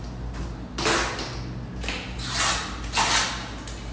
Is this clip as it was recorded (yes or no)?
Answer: yes